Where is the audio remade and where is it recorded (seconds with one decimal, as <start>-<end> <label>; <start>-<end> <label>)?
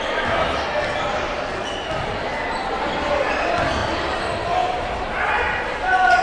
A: 0.0-6.2 recorded